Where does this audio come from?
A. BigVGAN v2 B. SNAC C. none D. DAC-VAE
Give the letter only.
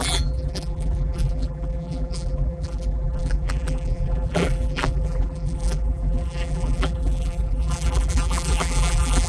A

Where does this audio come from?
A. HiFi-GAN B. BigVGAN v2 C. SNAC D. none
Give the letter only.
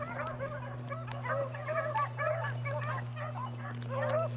D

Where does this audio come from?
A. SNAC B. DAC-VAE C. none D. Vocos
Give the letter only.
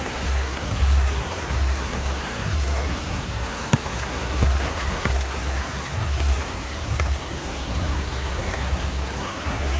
A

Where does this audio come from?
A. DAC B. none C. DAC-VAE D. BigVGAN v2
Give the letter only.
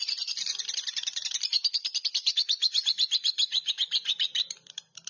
D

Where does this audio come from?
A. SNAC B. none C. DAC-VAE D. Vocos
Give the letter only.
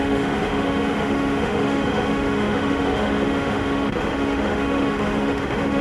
C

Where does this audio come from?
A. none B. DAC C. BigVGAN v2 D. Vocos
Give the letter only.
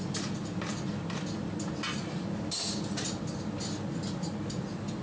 A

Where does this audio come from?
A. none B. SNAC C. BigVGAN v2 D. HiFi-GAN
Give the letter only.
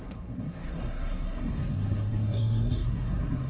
B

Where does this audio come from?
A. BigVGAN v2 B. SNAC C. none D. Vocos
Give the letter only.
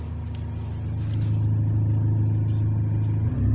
C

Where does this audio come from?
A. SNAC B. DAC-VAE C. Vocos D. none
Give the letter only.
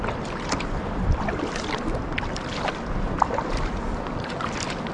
D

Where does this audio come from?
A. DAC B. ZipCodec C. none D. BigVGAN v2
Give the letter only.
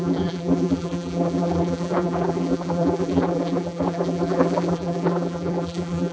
D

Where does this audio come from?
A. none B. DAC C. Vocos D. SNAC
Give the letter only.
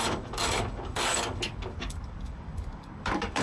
B